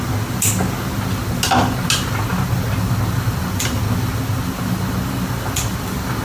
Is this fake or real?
real